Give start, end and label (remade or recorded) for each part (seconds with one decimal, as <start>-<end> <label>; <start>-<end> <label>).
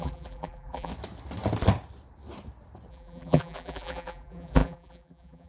0.0-0.9 remade; 0.9-2.9 recorded; 2.9-5.5 remade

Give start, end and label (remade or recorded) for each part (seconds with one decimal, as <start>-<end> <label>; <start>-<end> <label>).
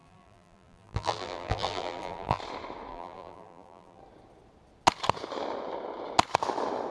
0.0-2.4 remade; 2.4-2.9 recorded; 2.9-4.0 remade; 4.0-6.9 recorded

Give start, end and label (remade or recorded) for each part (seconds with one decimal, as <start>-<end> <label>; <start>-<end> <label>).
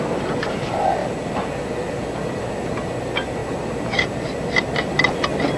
0.0-5.6 recorded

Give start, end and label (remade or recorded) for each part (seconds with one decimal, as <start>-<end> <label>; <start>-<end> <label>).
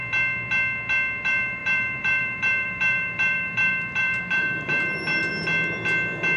0.0-1.2 recorded; 1.2-5.3 remade; 5.3-6.4 recorded